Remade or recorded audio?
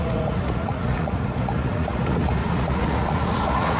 remade